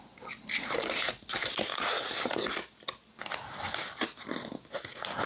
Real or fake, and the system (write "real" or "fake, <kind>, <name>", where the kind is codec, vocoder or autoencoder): real